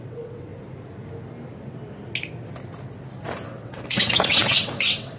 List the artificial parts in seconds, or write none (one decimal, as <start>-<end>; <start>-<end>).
0.0-0.5; 3.6-5.2